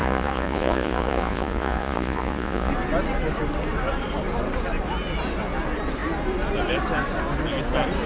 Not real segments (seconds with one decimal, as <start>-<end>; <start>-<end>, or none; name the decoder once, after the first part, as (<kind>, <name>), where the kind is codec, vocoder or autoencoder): 0.0-2.7 (vocoder, Vocos)